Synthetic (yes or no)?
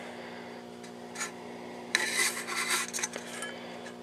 no